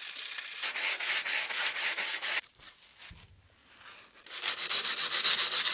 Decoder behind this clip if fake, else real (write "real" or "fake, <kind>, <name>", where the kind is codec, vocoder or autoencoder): real